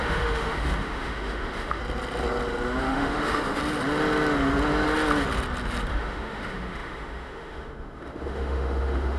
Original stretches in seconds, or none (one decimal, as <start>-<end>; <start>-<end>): 1.8-2.8; 3.6-5.9